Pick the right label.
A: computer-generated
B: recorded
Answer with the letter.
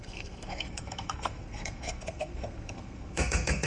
A